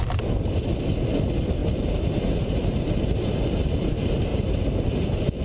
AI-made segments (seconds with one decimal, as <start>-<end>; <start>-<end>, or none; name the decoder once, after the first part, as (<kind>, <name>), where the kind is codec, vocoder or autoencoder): 1.6-3.9 (vocoder, BigVGAN v2); 4.3-5.4